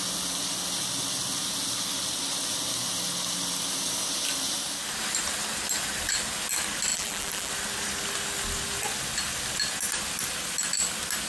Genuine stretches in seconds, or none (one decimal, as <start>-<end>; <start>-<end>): 0.0-6.9; 7.5-11.3